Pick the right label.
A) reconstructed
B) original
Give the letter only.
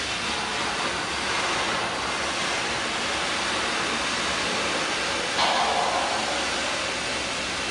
B